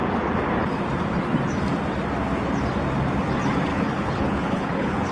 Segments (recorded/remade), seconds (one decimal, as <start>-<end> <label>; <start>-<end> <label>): 0.0-3.7 recorded; 3.7-5.1 remade